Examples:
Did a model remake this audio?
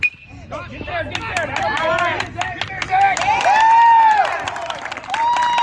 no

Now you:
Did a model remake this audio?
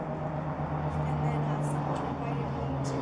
no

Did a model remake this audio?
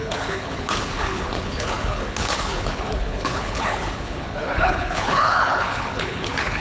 yes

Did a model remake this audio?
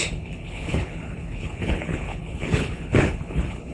yes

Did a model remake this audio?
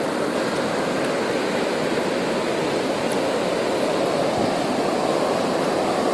no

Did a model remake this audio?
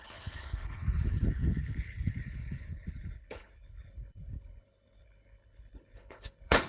yes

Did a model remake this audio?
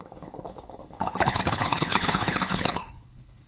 yes